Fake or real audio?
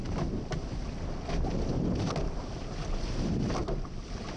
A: real